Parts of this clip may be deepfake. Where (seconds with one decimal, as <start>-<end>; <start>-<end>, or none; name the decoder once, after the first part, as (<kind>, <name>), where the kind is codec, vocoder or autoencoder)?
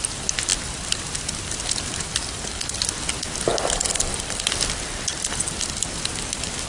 none